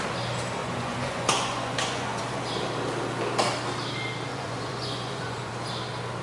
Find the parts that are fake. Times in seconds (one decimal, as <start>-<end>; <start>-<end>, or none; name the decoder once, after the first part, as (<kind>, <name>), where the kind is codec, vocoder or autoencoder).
0.6-2.2 (vocoder, Vocos); 4.3-5.5

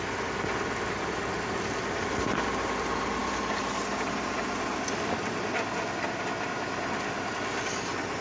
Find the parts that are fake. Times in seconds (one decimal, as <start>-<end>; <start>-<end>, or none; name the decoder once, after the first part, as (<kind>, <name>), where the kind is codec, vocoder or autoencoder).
none

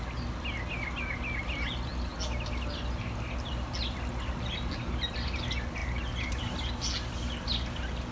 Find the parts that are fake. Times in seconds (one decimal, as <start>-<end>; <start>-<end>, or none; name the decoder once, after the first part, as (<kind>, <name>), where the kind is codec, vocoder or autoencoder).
none

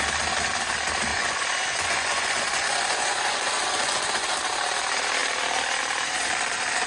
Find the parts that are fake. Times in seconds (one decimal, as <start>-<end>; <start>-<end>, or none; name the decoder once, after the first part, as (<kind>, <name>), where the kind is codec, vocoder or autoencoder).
1.1-4.4 (vocoder, Vocos)

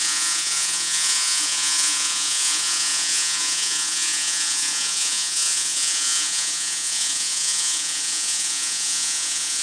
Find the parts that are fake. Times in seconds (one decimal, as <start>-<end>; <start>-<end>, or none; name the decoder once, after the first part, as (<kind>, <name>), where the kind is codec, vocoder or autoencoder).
0.0-9.6 (vocoder, Vocos)

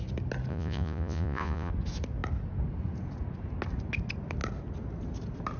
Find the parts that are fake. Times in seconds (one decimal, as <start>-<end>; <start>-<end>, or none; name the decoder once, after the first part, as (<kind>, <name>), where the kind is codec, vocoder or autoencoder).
0.5-1.7 (vocoder, Vocos)

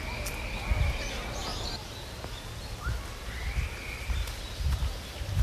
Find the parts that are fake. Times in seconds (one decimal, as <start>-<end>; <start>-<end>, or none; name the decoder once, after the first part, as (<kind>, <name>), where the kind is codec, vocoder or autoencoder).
none